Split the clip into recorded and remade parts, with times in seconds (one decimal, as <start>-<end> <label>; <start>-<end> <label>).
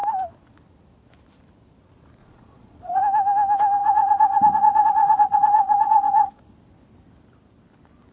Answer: 0.0-2.2 recorded; 2.2-3.0 remade; 3.0-3.8 recorded; 3.8-6.4 remade; 6.4-8.1 recorded